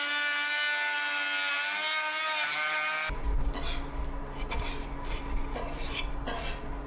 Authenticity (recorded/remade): recorded